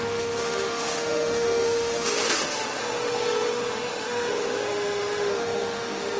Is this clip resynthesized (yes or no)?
yes